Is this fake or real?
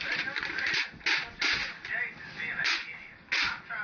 real